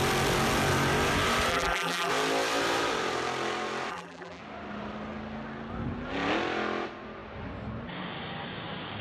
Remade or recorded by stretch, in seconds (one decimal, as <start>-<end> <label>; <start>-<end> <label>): 0.0-1.5 recorded; 1.5-2.1 remade; 2.1-3.9 recorded; 3.9-4.4 remade; 4.4-9.0 recorded